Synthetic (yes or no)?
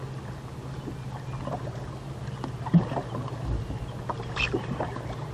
no